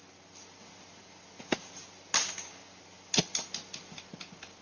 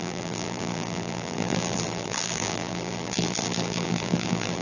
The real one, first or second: first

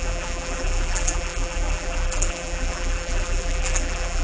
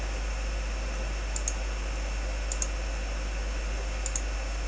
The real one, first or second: second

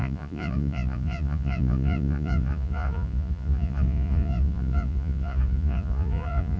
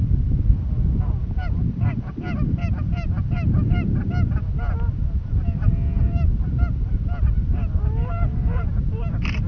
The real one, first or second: second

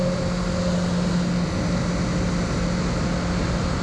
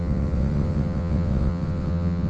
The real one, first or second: first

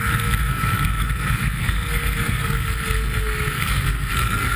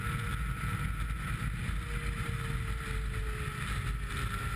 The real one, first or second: second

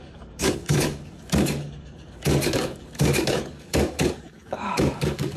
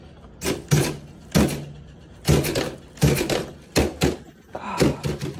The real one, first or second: second